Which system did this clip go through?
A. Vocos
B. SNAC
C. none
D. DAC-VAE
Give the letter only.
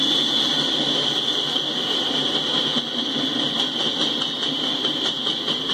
C